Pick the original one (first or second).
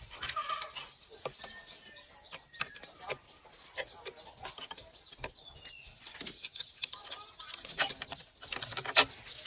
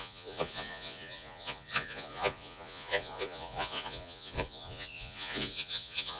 first